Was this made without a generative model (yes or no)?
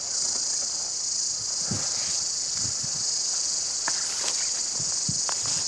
yes